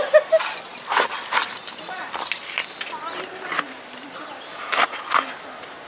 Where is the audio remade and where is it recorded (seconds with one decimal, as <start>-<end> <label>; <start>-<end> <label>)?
0.0-5.9 recorded